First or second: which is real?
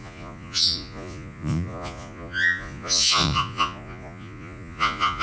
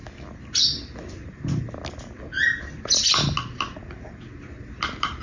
second